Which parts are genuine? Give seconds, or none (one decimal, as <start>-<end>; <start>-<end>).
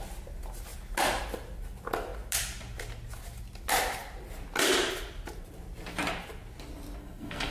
0.0-7.0